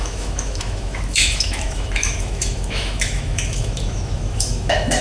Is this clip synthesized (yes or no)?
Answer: yes